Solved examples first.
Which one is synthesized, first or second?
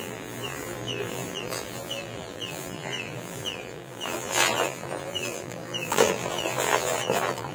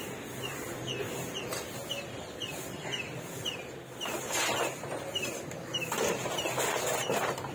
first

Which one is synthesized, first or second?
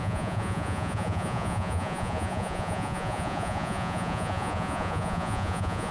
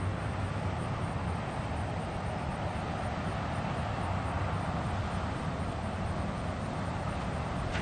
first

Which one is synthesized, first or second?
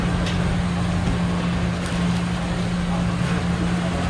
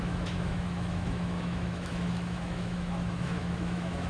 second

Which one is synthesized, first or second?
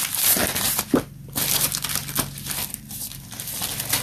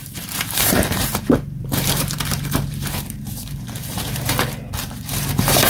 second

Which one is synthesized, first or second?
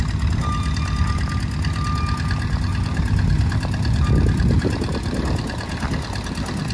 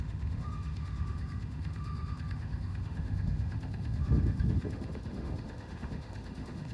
second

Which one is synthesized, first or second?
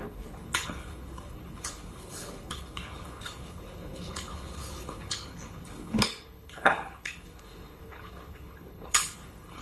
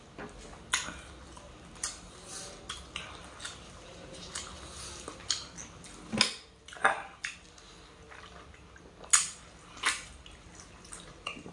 first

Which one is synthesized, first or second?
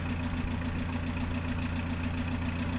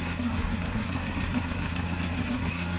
second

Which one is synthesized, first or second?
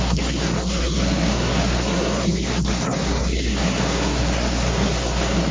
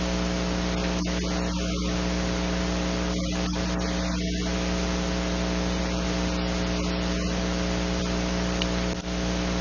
first